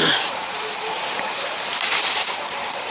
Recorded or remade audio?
remade